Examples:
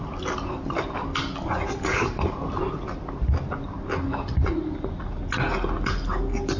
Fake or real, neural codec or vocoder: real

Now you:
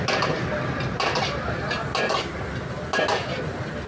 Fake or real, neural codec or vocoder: real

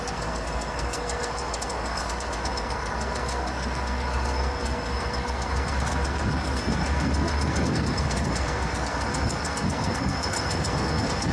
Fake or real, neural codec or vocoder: fake, codec, SNAC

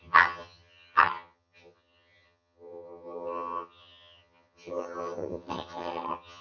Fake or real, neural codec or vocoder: fake, vocoder, HiFi-GAN